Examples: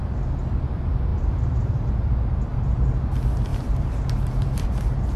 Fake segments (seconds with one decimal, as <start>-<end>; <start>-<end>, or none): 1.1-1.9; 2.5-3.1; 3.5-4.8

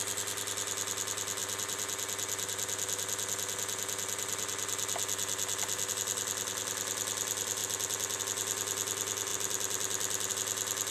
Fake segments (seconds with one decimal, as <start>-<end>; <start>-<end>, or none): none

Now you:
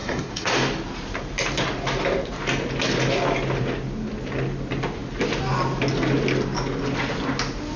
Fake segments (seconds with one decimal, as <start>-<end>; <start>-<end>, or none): 0.0-0.5